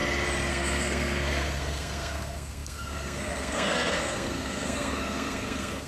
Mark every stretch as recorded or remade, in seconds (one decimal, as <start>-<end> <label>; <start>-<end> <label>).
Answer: 0.0-0.5 recorded; 0.5-5.9 remade